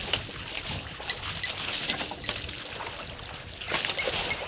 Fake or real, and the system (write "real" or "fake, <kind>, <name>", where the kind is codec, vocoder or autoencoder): real